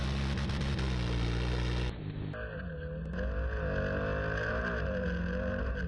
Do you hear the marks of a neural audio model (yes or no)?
no